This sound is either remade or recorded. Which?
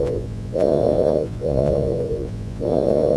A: remade